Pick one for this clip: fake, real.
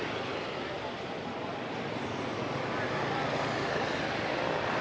real